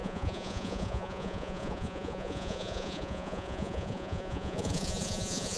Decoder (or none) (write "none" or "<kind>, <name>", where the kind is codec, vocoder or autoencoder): vocoder, Vocos